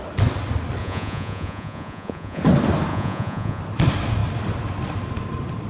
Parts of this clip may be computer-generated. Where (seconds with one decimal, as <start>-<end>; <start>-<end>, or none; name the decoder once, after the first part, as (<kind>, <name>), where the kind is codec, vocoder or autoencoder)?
0.8-2.4 (vocoder, Vocos); 2.9-3.6